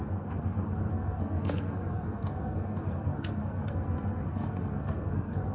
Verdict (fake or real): fake